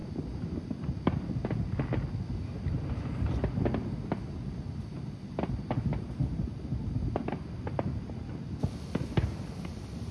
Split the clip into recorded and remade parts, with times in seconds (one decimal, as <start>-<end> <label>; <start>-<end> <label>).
0.0-10.1 recorded